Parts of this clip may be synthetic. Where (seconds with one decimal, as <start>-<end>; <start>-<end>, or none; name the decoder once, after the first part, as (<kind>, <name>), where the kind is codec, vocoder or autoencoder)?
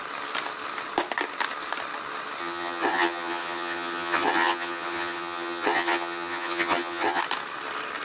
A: 2.4-7.2 (vocoder, HiFi-GAN)